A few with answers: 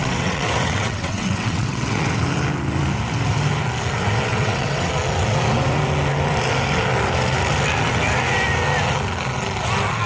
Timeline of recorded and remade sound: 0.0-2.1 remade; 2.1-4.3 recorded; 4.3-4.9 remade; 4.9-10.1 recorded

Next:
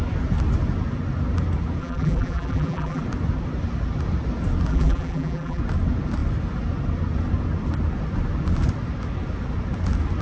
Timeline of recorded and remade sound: 0.0-1.8 recorded; 1.8-3.0 remade; 3.0-4.7 recorded; 4.7-5.6 remade; 5.6-10.2 recorded

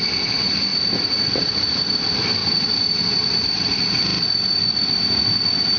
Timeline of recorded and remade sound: 0.0-5.8 recorded